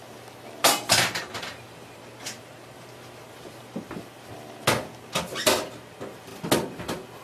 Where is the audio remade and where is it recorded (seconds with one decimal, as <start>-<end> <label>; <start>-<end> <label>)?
0.0-0.6 recorded; 0.6-4.0 remade; 4.0-7.2 recorded